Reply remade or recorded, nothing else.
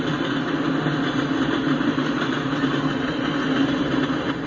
recorded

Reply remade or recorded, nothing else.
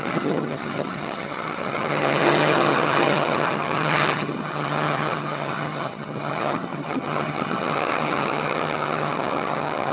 remade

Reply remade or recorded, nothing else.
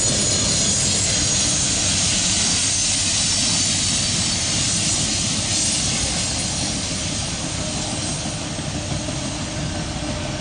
recorded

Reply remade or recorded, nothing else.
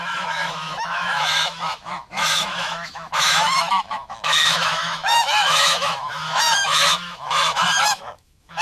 remade